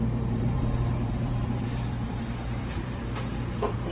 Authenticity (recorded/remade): remade